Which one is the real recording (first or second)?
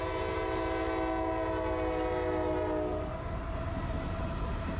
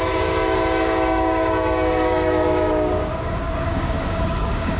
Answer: first